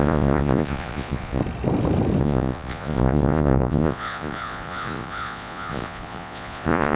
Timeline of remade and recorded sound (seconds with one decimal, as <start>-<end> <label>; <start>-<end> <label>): 0.0-1.4 remade; 1.4-2.2 recorded; 2.2-7.0 remade